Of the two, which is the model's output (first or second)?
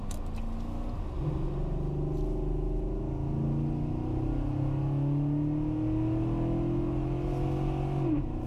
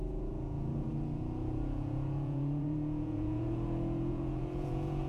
second